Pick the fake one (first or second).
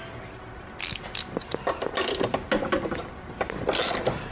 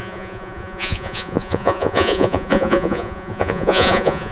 second